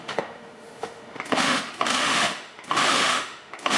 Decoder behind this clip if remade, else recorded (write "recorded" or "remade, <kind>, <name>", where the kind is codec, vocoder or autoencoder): remade, autoencoder, DAC-VAE